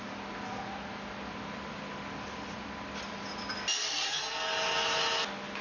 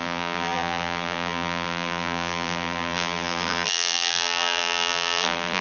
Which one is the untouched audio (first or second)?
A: first